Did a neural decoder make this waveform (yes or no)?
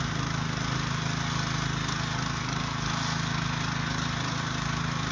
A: no